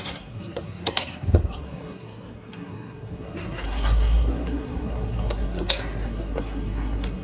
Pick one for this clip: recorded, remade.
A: remade